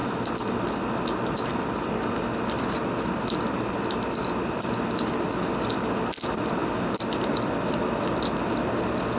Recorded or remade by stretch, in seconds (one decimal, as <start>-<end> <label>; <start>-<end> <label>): 0.0-9.2 recorded